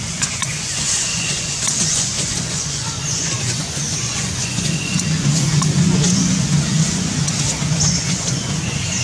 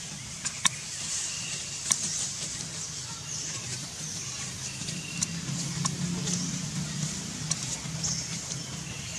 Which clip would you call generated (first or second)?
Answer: first